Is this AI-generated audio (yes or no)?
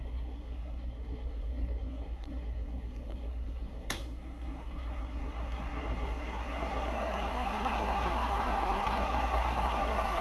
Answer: yes